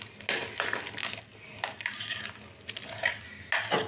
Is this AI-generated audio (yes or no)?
no